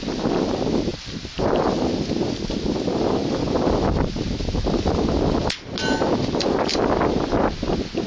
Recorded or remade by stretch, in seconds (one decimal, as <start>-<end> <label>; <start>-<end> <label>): 0.0-8.1 recorded